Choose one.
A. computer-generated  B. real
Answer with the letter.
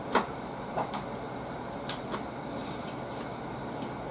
B